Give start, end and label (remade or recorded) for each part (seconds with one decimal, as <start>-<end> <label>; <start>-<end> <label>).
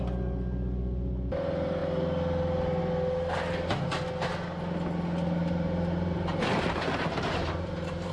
0.0-5.4 recorded; 5.4-8.1 remade